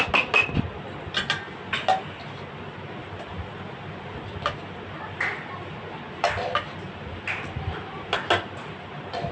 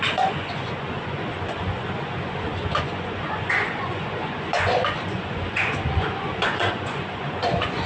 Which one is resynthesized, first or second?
second